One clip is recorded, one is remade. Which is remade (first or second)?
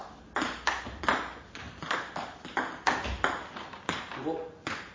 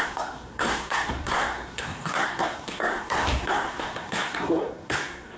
second